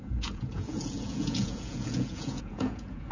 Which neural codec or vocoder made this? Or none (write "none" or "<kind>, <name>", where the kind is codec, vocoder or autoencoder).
vocoder, Vocos